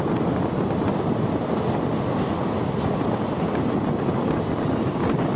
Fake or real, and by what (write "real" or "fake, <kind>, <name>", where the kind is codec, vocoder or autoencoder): real